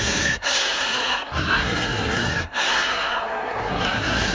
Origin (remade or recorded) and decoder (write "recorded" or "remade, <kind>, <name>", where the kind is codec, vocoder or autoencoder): remade, codec, SNAC